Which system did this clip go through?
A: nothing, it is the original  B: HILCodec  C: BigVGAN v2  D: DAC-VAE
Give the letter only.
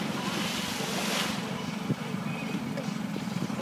A